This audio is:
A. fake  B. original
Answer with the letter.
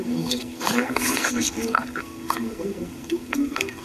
A